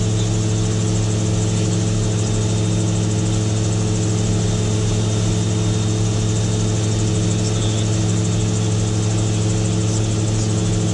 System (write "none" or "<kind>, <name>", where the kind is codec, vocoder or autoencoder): none